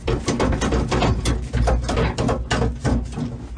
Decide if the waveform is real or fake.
real